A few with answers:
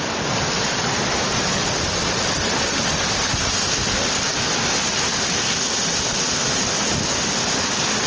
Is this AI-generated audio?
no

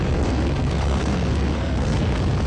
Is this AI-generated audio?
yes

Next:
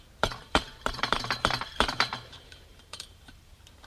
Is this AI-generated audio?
yes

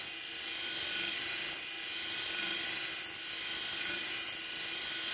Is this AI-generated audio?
no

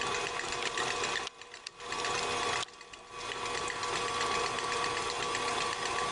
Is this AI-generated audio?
no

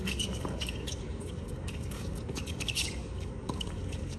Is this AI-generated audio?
yes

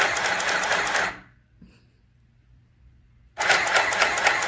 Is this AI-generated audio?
no